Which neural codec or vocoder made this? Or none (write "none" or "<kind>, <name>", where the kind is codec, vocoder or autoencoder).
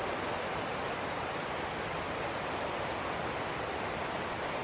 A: none